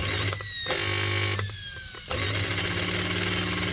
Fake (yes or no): no